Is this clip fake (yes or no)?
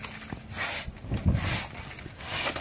no